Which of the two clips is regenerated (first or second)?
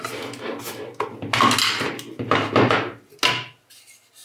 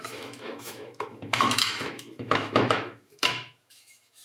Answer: second